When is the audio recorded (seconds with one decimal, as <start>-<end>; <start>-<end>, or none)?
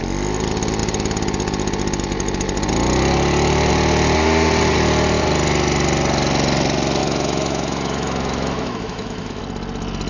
0.0-7.0; 9.4-10.1